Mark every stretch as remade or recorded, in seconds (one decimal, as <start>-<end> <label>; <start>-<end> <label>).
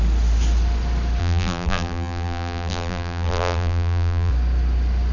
0.0-1.2 recorded; 1.2-4.3 remade; 4.3-5.1 recorded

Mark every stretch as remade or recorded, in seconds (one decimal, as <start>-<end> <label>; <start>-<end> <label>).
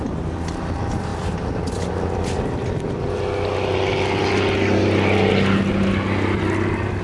0.0-7.0 recorded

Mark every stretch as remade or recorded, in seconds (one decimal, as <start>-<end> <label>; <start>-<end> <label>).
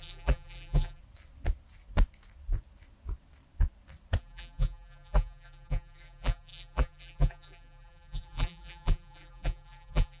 0.0-1.0 remade; 1.0-4.2 recorded; 4.2-10.2 remade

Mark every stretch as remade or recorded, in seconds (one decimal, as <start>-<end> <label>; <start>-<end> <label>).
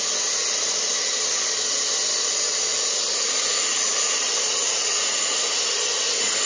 0.0-2.7 recorded; 2.7-4.7 remade; 4.7-6.5 recorded